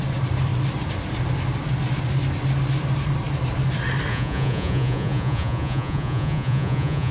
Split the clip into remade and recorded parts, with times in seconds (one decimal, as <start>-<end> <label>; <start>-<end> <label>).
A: 0.0-4.1 recorded; 4.1-7.1 remade